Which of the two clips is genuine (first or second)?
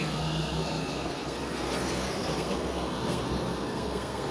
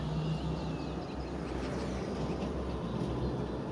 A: second